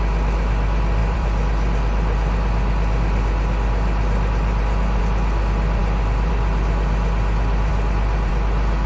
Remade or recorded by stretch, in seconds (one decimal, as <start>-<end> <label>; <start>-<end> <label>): 0.0-1.0 recorded; 1.0-5.0 remade; 5.0-5.8 recorded; 5.8-6.3 remade; 6.3-8.9 recorded